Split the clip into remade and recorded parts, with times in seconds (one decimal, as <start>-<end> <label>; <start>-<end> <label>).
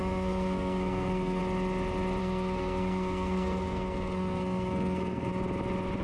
0.0-1.4 remade; 1.4-2.2 recorded; 2.2-5.3 remade; 5.3-6.0 recorded